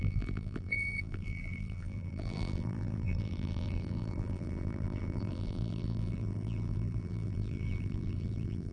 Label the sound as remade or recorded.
remade